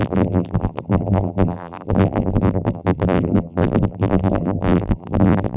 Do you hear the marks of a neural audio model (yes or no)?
yes